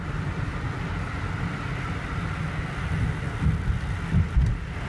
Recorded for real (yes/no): yes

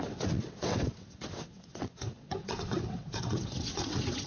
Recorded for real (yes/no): no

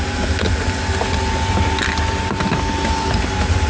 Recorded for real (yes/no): yes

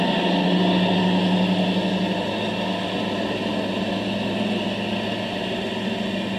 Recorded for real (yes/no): yes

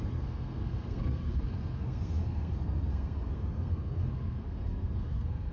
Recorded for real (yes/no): no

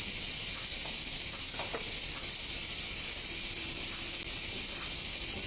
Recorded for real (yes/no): no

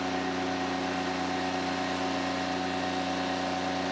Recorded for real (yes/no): yes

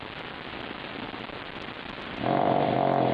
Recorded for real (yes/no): yes